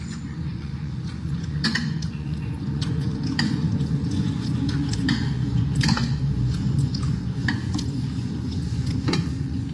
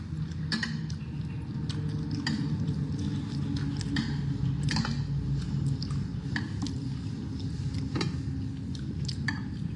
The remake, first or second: first